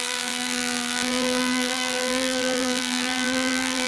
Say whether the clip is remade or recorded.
remade